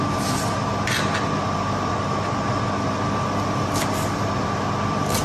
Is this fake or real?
real